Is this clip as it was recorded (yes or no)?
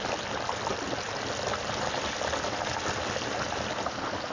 yes